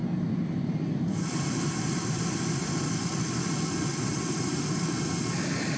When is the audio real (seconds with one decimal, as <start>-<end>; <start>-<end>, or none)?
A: 3.5-3.9; 4.5-5.8